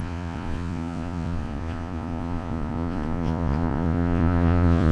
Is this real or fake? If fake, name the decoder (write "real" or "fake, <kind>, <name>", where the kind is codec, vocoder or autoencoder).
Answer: fake, vocoder, Vocos